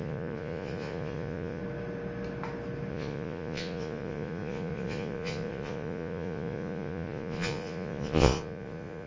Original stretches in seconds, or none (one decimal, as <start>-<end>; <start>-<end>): 1.6-2.9